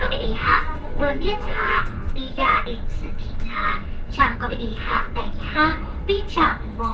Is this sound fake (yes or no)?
yes